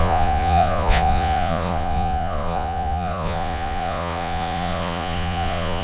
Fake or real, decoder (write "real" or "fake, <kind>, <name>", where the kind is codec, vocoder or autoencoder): fake, vocoder, Vocos